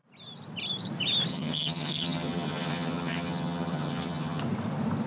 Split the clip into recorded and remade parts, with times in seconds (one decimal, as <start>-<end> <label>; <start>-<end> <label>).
0.0-1.3 recorded; 1.3-4.4 remade; 4.4-5.1 recorded